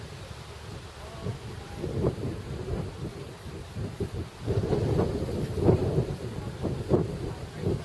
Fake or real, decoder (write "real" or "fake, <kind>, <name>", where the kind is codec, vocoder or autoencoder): real